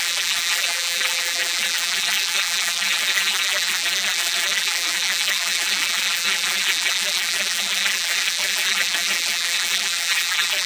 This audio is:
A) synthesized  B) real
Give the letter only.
A